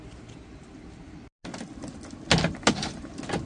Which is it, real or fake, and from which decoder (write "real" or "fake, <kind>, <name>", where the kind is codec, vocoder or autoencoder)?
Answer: real